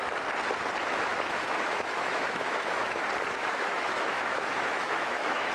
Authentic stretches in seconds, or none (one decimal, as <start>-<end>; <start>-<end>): 0.0-1.1; 3.0-3.4